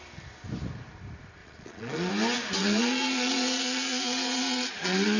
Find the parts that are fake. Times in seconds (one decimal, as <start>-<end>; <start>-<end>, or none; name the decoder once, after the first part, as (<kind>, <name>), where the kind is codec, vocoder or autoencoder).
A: 1.4-2.1 (vocoder, Vocos); 2.6-5.2